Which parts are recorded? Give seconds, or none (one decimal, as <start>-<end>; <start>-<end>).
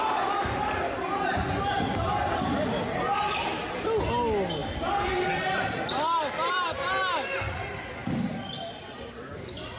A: 0.0-4.6; 7.0-8.0; 9.3-9.8